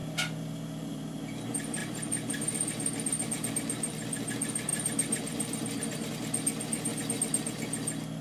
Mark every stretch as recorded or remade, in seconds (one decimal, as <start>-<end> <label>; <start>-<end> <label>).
0.0-1.2 remade; 1.2-4.7 recorded; 4.7-6.1 remade; 6.1-8.2 recorded